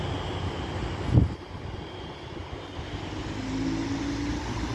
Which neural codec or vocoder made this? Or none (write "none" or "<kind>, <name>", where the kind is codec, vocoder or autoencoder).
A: none